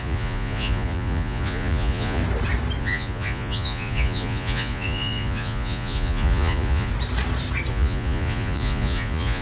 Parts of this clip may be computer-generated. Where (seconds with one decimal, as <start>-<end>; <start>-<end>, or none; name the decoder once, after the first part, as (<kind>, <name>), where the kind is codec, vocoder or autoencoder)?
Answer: 0.0-2.2 (vocoder, Vocos); 2.8-6.9; 7.7-9.4